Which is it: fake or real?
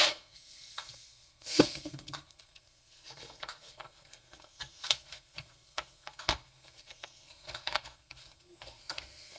fake